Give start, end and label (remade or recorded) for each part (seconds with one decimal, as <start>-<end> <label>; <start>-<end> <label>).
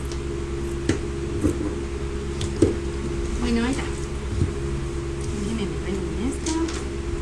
0.0-7.2 recorded